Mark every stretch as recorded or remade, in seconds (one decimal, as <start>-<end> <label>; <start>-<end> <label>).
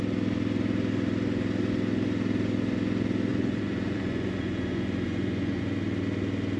0.0-3.3 recorded; 3.3-5.6 remade; 5.6-6.6 recorded